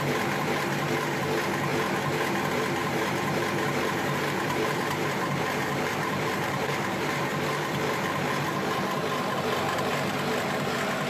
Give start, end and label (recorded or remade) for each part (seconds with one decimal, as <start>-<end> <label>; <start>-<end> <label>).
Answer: 0.0-2.8 recorded; 2.8-7.3 remade; 7.3-11.1 recorded